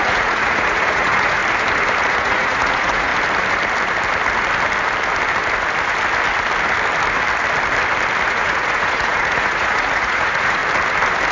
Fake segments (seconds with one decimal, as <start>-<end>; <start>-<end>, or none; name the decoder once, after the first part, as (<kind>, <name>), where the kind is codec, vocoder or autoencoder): 0.0-1.4 (vocoder, Vocos); 2.1-3.1; 8.3-10.6